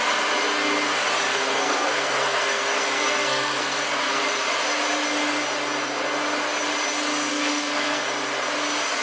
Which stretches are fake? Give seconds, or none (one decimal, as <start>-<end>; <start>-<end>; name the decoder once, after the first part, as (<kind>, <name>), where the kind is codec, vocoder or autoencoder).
1.3-4.2 (codec, SNAC); 7.3-8.0